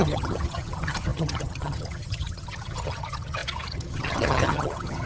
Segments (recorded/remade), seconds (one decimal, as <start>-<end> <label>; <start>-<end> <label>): 0.0-5.1 remade